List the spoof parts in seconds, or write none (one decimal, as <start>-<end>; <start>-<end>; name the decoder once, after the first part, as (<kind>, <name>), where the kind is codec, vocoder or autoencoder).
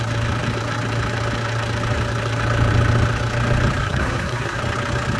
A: 3.8-4.6 (codec, SNAC)